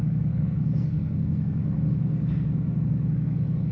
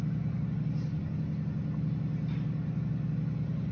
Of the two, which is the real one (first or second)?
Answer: second